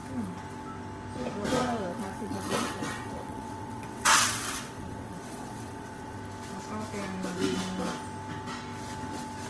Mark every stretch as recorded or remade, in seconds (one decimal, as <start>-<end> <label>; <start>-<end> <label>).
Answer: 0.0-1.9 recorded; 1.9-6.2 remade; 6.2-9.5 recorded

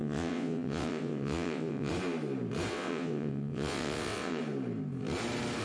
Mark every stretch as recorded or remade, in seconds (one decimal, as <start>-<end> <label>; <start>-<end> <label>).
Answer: 0.0-1.9 remade; 1.9-2.7 recorded; 2.7-4.4 remade; 4.4-5.6 recorded

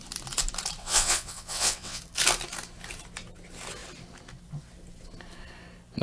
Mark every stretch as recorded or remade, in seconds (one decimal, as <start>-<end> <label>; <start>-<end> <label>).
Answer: 0.0-0.8 recorded; 0.8-2.0 remade; 2.0-6.0 recorded